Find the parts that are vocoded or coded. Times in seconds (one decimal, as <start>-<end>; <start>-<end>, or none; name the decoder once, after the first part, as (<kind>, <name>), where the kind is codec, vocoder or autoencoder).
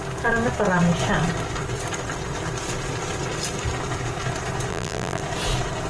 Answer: 4.7-5.2 (vocoder, BigVGAN v2)